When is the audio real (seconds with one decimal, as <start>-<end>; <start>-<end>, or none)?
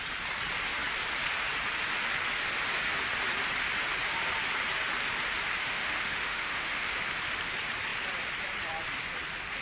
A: 0.0-5.6; 6.9-9.6